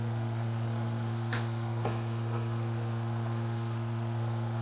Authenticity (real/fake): fake